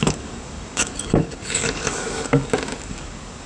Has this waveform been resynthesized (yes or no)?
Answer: yes